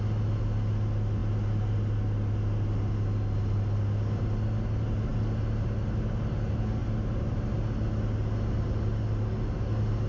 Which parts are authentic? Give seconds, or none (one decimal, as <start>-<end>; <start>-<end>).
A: 0.0-10.1